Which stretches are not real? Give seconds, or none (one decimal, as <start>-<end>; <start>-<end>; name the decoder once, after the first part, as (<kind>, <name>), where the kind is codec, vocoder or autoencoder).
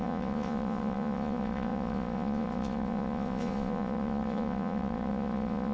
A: 0.0-5.7 (vocoder, Vocos)